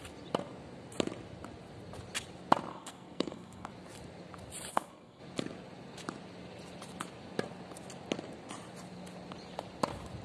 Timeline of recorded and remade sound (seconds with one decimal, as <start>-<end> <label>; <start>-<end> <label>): 0.0-2.7 recorded; 2.7-3.7 remade; 3.7-4.7 recorded; 4.7-5.2 remade; 5.2-10.2 recorded